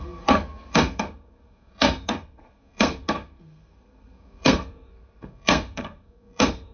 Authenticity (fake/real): fake